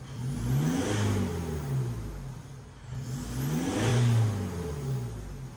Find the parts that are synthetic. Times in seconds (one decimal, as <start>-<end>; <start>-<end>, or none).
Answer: none